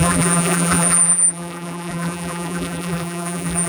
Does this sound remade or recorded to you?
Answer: remade